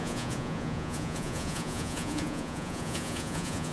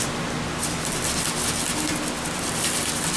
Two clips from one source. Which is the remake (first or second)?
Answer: first